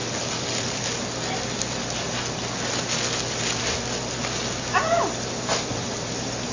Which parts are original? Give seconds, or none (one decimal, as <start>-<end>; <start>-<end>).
0.0-6.5